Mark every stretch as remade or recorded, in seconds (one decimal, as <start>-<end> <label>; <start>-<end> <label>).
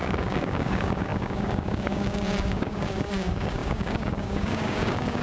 0.0-5.2 remade